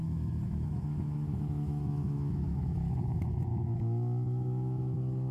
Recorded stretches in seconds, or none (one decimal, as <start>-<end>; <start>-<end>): none